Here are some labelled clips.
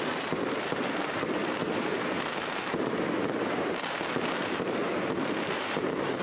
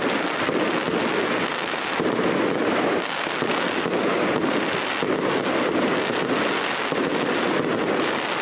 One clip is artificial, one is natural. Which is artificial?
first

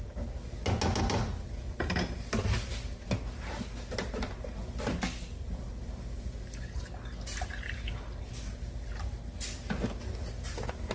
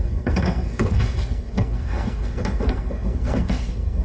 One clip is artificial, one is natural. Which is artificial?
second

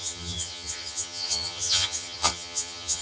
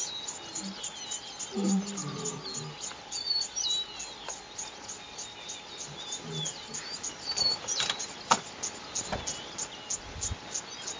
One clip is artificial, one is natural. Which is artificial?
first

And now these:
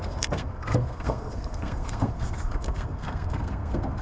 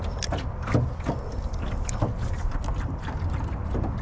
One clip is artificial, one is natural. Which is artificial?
first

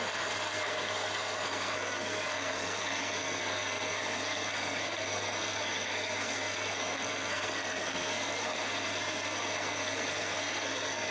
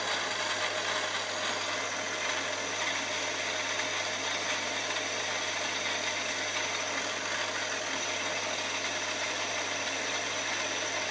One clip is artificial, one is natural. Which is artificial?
first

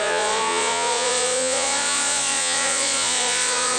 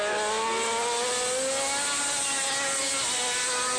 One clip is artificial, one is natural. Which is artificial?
first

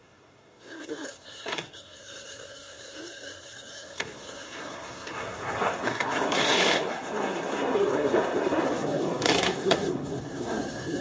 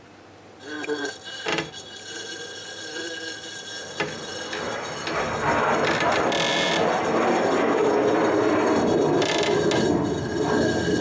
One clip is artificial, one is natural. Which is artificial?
first